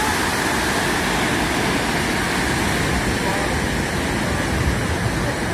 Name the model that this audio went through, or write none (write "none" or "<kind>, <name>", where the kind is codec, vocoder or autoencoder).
none